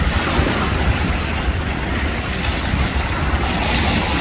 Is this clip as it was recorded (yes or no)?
yes